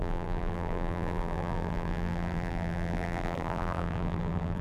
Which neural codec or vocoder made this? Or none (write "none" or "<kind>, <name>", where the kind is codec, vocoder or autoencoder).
vocoder, BigVGAN v2